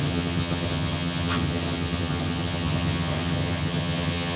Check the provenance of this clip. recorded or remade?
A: remade